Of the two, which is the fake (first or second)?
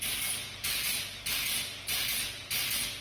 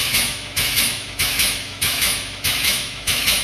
second